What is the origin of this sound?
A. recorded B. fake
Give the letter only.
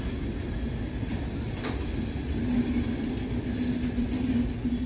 A